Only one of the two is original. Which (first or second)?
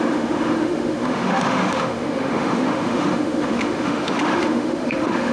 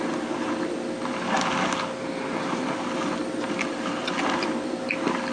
second